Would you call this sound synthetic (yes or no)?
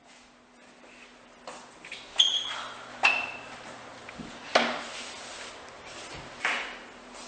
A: no